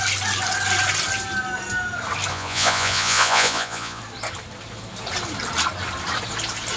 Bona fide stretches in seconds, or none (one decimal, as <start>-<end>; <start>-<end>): 0.0-2.3; 4.0-6.8

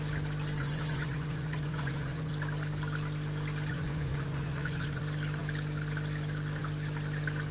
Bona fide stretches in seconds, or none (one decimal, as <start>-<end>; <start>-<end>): 0.0-0.6; 2.3-3.7; 5.0-7.5

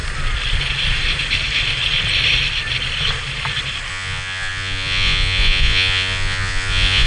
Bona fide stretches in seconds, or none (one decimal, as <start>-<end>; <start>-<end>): 0.0-3.9

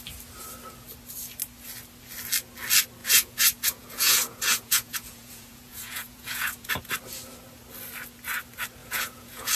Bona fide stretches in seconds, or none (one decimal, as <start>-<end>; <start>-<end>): 0.0-3.0; 6.7-8.8

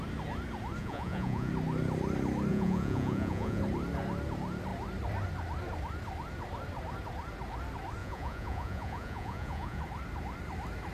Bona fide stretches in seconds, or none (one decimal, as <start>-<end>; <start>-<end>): 0.0-0.8; 1.5-2.5; 3.6-8.0; 9.8-10.9

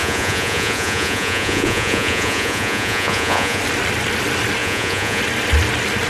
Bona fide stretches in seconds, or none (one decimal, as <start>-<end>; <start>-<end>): 3.6-4.6; 5.2-6.1

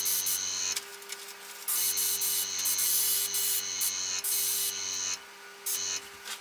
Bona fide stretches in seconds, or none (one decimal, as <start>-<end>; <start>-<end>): 0.0-6.4